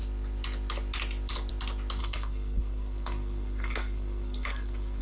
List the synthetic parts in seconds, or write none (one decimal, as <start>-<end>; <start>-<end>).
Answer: 2.0-5.0